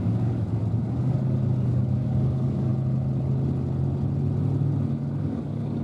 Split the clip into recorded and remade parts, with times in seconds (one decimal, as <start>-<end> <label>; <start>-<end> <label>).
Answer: 0.0-2.7 remade; 2.7-5.2 recorded; 5.2-5.8 remade